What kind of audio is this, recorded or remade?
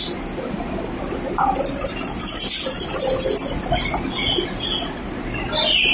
recorded